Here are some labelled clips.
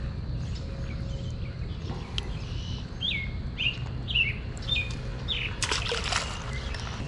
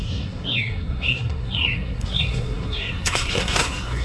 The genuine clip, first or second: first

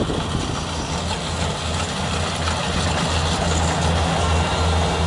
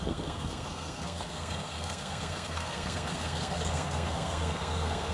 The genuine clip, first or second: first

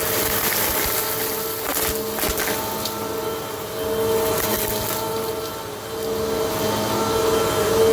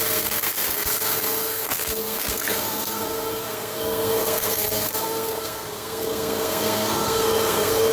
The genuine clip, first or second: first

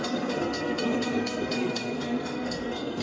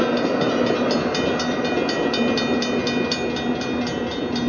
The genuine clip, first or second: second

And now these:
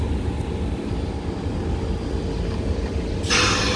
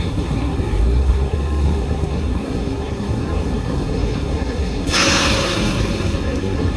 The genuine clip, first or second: first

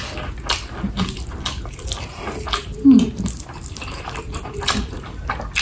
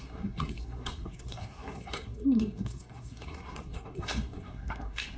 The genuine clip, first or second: first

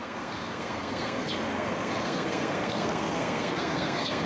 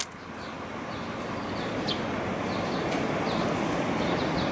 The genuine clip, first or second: second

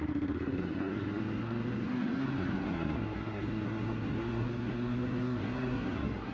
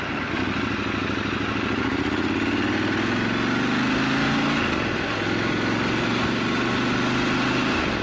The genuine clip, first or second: second